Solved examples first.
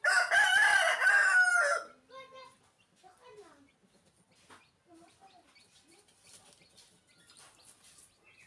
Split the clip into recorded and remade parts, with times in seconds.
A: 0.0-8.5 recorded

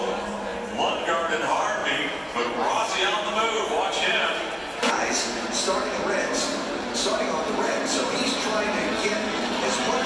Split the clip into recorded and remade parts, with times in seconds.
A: 0.0-1.8 recorded; 1.8-2.9 remade; 2.9-10.1 recorded

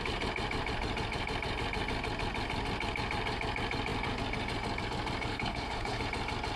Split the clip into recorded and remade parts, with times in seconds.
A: 0.0-5.3 recorded; 5.3-6.0 remade; 6.0-6.6 recorded